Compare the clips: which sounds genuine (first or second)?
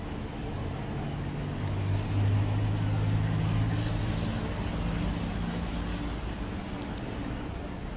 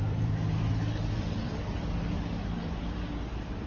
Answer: first